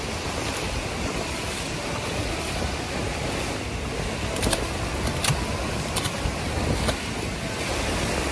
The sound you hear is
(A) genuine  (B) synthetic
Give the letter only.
A